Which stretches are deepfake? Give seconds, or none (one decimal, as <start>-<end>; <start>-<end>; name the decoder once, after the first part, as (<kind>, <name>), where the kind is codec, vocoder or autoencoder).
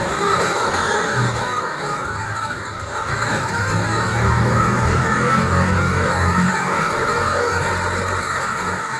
0.0-7.7 (codec, DAC); 8.2-9.0